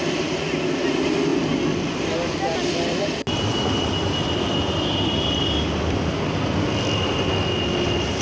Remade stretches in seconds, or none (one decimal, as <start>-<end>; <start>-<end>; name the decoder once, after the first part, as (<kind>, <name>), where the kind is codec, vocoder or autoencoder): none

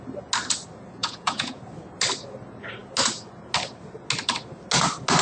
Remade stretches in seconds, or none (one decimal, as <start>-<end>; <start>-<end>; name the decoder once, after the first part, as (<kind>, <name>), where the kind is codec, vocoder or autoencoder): 1.0-1.6 (vocoder, Vocos)

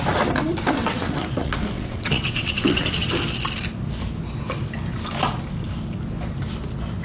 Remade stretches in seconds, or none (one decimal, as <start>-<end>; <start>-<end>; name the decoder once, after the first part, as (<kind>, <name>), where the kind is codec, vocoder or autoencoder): 0.8-3.1 (vocoder, WaveNeXt)

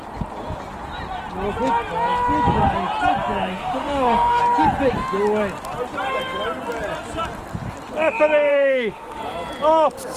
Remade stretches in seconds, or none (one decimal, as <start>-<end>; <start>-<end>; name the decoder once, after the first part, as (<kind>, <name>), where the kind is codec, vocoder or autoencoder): 3.5-4.4 (autoencoder, DAC-VAE); 8.5-9.2

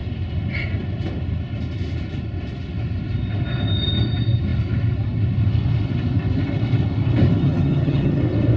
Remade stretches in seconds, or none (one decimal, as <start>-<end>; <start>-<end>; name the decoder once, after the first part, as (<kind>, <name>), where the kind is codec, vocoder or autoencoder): 7.4-8.2 (vocoder, HiFi-GAN)

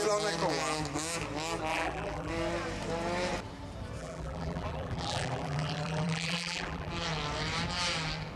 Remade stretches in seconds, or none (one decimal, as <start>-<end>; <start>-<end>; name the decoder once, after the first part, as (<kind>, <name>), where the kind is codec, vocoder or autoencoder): 1.7-2.3 (vocoder, BigVGAN v2); 4.0-6.9

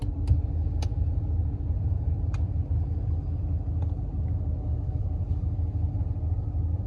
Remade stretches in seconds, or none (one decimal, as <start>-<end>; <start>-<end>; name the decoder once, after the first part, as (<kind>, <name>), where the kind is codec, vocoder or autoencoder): none